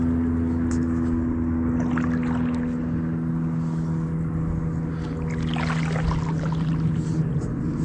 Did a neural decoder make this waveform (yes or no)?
no